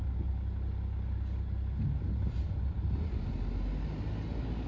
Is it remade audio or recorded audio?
recorded